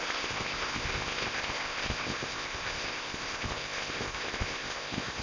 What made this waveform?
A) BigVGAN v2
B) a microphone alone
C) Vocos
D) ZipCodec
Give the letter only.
D